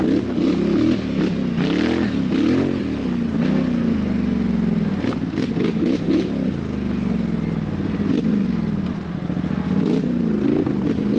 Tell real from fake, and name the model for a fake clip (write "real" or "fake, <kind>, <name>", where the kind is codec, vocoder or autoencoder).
real